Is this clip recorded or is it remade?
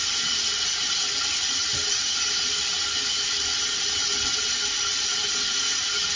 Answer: recorded